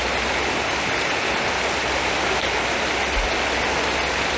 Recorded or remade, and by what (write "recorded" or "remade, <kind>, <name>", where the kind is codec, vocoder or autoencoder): recorded